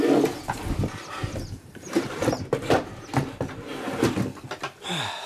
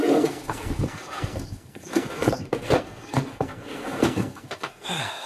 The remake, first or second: second